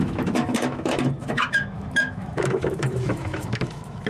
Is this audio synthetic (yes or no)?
yes